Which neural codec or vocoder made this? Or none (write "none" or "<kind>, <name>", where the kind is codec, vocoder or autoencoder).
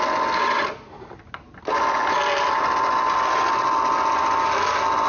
none